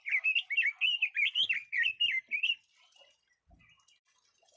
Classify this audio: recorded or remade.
recorded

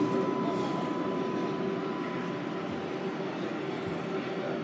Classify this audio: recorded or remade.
recorded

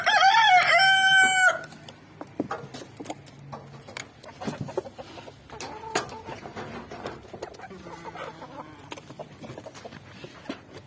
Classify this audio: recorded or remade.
recorded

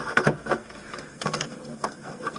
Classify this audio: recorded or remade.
remade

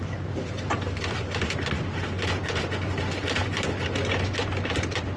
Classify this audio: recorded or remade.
recorded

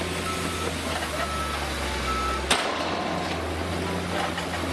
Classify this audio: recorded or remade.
recorded